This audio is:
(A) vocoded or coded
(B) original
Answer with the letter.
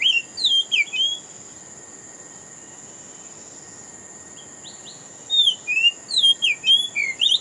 B